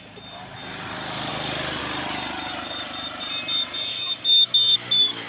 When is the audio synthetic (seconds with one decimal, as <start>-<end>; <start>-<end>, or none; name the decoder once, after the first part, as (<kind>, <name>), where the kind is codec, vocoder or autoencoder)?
3.9-5.3 (codec, DAC)